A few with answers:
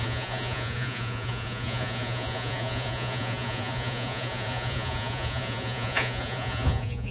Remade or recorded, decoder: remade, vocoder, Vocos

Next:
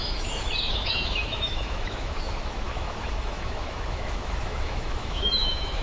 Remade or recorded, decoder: remade, autoencoder, DAC-VAE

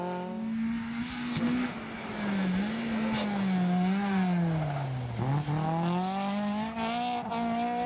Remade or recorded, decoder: recorded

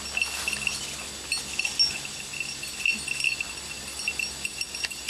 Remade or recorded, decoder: recorded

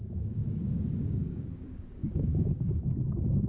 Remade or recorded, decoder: remade, codec, DAC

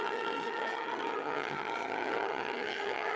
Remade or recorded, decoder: remade, vocoder, HiFi-GAN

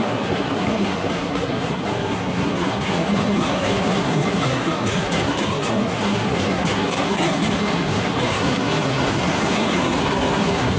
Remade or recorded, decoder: remade, codec, SNAC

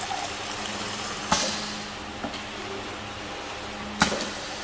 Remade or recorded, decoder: recorded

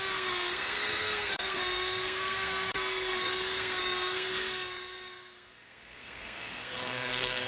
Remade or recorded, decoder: remade, codec, SNAC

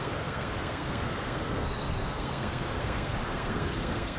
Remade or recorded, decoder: remade, codec, SNAC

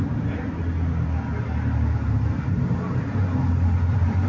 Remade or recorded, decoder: recorded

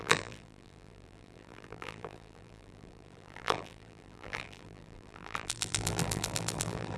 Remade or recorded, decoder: remade, vocoder, BigVGAN v2